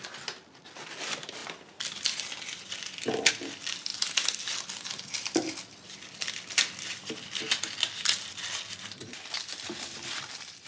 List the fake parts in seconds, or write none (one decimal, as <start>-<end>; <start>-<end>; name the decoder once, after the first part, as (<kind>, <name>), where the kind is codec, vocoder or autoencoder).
none